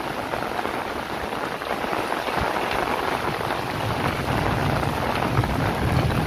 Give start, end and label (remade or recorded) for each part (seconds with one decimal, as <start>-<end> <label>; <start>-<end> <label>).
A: 0.0-6.3 recorded